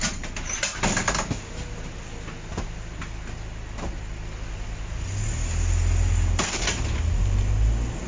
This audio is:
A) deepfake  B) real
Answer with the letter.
B